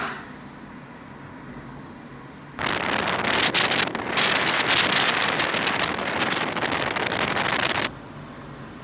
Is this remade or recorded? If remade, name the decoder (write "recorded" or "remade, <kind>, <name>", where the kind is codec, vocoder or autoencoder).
recorded